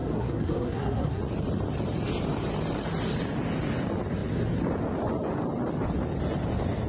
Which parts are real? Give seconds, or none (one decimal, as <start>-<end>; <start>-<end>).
1.2-6.9